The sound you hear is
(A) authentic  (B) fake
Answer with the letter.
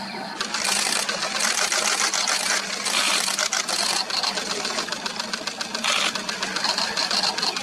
A